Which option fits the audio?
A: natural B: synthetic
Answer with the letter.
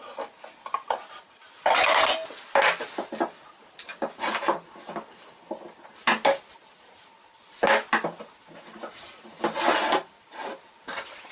A